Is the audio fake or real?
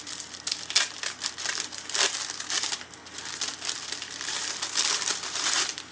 real